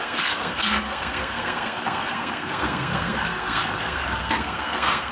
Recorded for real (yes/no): no